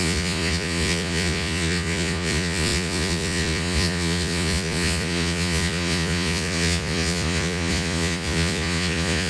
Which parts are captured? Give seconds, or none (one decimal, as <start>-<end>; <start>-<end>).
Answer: none